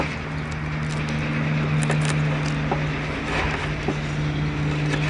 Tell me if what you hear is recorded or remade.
recorded